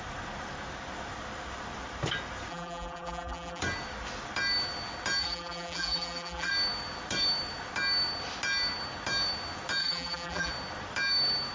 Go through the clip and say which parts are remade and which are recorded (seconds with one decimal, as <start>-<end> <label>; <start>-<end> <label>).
0.0-2.5 recorded; 2.5-3.6 remade; 3.6-5.2 recorded; 5.2-6.5 remade; 6.5-9.8 recorded; 9.8-10.5 remade; 10.5-11.5 recorded